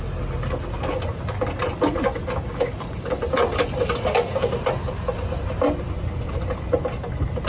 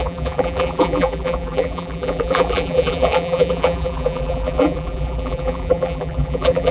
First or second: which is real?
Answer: first